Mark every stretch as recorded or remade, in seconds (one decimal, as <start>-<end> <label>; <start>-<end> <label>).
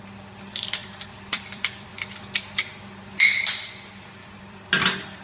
0.0-0.8 recorded; 0.8-1.9 remade; 1.9-4.2 recorded; 4.2-5.2 remade